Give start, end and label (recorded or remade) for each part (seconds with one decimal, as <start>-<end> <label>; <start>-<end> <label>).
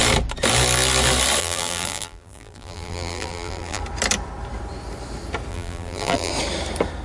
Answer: 0.0-1.4 recorded; 1.4-3.8 remade; 3.8-5.5 recorded; 5.5-6.3 remade; 6.3-7.0 recorded